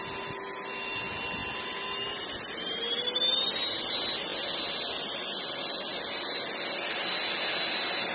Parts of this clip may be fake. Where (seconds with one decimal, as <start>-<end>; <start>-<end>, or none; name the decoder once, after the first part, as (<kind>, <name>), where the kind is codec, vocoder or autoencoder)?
none